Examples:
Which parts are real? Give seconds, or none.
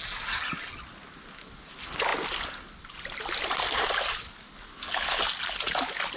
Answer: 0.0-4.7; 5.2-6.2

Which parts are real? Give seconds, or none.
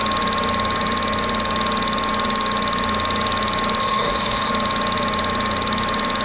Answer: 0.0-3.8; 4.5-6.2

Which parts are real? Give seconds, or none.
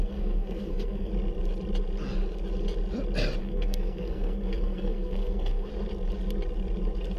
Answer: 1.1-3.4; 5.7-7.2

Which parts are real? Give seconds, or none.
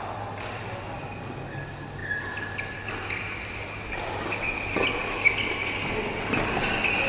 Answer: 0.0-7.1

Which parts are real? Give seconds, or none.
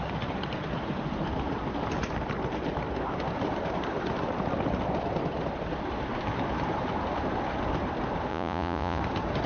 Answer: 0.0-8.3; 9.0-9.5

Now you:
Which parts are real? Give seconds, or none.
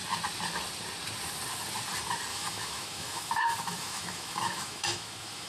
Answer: 0.0-2.3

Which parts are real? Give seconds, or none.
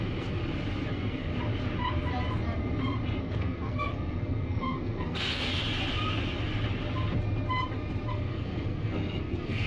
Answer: 0.4-0.9; 1.3-3.2; 5.5-8.1